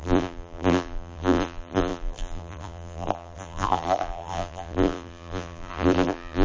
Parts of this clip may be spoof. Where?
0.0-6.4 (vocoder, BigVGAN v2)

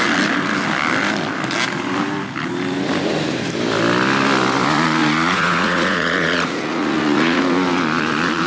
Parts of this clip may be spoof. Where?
5.0-7.4 (vocoder, Vocos)

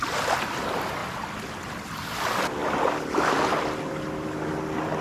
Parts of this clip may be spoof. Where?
none

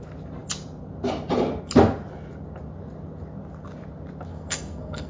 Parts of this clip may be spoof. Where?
4.3-5.1 (codec, SNAC)